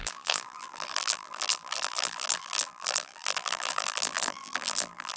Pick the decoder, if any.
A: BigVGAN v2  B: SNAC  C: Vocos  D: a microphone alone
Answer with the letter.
A